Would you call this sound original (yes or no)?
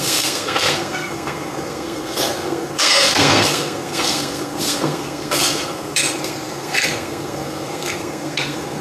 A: no